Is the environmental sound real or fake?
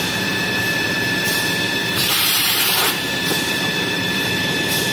fake